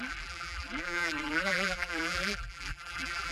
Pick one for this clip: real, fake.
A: fake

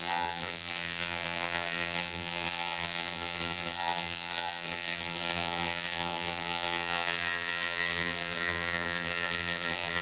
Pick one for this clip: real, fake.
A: fake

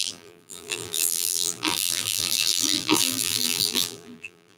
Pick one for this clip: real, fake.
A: fake